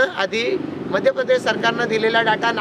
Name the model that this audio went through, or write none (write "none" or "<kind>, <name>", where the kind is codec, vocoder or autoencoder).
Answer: none